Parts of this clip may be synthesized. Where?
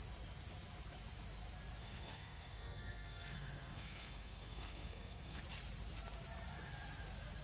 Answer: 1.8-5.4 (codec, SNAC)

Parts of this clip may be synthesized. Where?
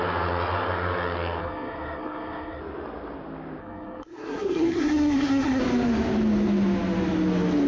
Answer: 1.4-2.6 (codec, SNAC); 3.6-5.6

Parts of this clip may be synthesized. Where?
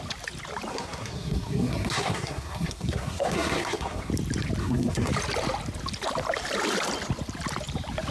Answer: 0.7-4.1 (codec, SNAC); 4.6-5.1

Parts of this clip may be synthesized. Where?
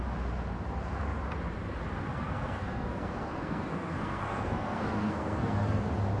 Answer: 2.1-5.8 (codec, SNAC)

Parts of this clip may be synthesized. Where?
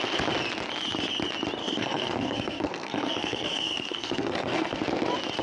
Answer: 1.6-4.8 (codec, SNAC)